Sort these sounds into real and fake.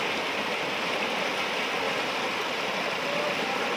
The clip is real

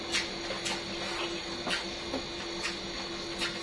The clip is real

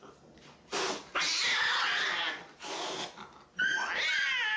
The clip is real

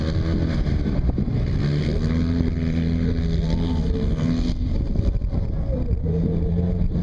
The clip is real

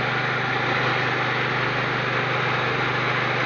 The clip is real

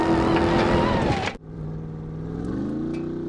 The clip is real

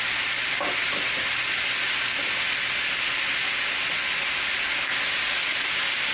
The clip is real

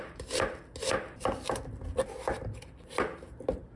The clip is real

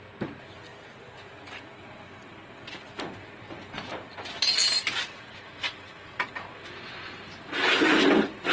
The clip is real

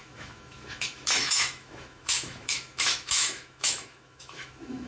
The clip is fake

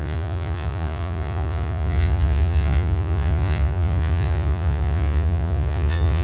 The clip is fake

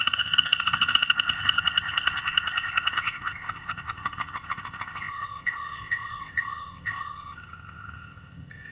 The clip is fake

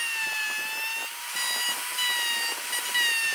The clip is real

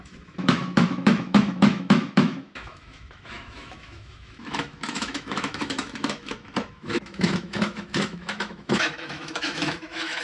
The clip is fake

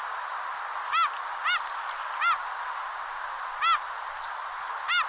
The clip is real